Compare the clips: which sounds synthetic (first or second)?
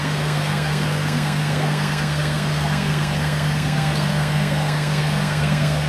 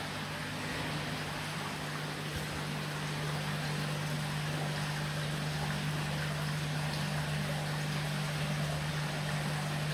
first